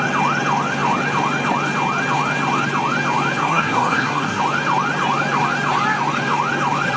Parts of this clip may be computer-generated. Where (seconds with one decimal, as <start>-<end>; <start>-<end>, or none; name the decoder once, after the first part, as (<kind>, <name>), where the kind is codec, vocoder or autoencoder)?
3.4-4.4 (codec, SNAC)